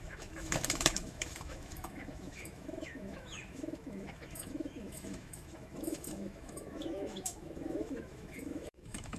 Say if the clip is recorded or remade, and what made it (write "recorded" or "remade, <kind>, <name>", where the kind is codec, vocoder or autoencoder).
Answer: remade, autoencoder, DAC-VAE